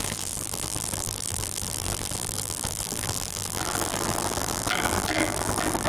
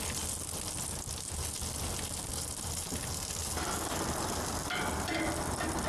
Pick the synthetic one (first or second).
first